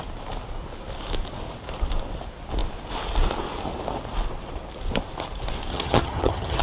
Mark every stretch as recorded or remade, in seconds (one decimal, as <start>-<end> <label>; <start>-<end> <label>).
0.0-5.7 recorded; 5.7-6.6 remade